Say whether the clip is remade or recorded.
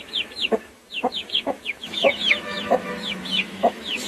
remade